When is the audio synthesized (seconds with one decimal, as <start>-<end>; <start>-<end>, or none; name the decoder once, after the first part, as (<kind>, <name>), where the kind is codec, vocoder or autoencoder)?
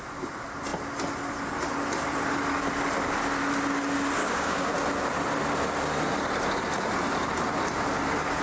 4.2-4.7 (codec, DAC)